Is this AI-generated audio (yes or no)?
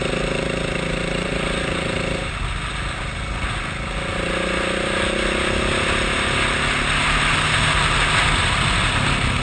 no